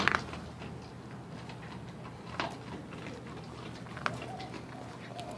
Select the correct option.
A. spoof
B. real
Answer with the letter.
B